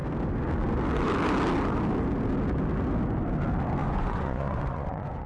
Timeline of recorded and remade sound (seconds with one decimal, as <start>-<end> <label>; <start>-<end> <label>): 0.0-3.8 recorded; 3.8-5.3 remade